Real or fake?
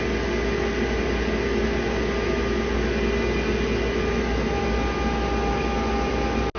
real